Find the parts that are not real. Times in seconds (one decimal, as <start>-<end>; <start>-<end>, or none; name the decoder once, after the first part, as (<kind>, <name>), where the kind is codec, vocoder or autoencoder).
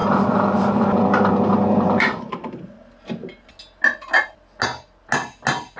0.0-2.8 (vocoder, BigVGAN v2)